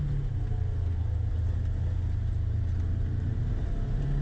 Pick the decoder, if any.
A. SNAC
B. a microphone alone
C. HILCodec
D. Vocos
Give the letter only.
B